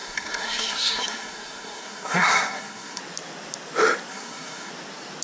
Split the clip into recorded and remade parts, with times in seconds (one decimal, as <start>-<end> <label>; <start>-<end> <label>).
0.0-3.0 remade; 3.0-4.1 recorded; 4.1-4.7 remade; 4.7-5.2 recorded